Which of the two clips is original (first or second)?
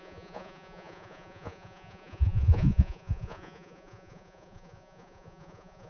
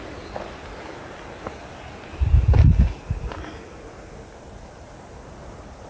second